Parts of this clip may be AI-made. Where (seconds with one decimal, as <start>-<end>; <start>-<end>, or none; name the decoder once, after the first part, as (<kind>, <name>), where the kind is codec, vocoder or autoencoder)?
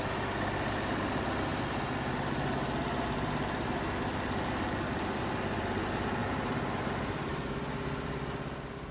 none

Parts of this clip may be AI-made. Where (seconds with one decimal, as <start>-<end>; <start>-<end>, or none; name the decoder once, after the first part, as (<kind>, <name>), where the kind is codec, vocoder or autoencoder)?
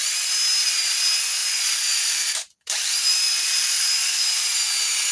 1.4-4.5 (vocoder, BigVGAN v2)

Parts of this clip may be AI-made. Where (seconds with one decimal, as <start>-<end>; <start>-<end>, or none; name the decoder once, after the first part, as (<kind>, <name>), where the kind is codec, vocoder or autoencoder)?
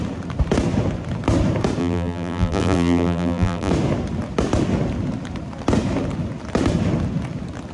1.8-3.7 (vocoder, BigVGAN v2)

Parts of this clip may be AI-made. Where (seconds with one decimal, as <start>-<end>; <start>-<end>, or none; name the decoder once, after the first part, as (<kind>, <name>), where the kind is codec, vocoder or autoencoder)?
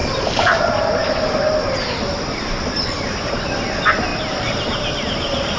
0.0-0.6 (vocoder, BigVGAN v2)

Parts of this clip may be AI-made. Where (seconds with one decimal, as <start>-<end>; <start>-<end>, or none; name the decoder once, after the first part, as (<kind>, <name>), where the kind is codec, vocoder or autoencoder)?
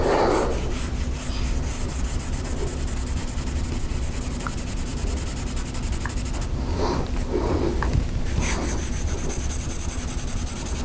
4.9-6.5 (vocoder, BigVGAN v2)